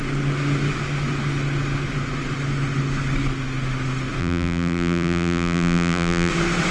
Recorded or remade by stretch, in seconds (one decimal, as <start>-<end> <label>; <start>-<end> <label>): 0.0-4.2 recorded; 4.2-6.3 remade; 6.3-6.7 recorded